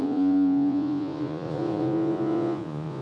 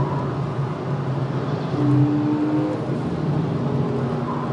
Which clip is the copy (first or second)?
first